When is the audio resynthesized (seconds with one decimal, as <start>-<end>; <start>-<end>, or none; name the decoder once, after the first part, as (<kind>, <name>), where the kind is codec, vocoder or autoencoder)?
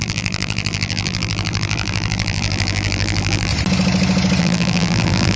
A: 0.0-3.5 (vocoder, BigVGAN v2); 4.4-5.4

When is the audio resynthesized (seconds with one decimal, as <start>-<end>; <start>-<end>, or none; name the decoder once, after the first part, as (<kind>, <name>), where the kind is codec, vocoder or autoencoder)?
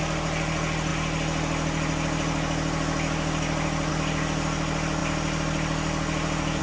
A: none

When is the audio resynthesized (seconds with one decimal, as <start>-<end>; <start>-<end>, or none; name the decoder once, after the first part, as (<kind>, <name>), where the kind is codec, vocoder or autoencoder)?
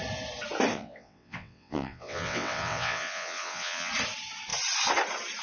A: 0.7-3.9 (vocoder, WaveNeXt)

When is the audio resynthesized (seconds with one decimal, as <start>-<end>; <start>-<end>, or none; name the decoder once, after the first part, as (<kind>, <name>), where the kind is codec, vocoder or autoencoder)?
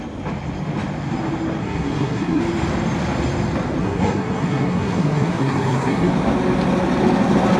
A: 1.6-2.4 (codec, SNAC); 3.8-6.1